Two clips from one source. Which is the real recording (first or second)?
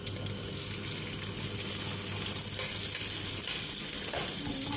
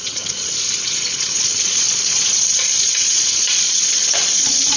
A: first